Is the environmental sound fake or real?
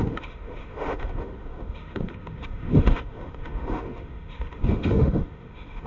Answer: fake